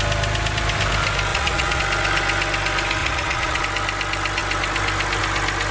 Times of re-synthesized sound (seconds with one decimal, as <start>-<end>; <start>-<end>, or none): 1.3-1.8; 3.0-3.6